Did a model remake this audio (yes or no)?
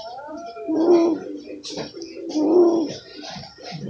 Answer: no